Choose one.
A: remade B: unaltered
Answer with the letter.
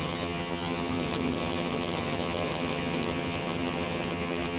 A